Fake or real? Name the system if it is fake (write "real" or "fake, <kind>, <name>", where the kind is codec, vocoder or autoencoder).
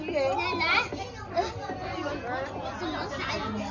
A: real